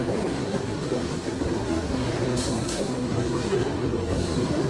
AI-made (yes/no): yes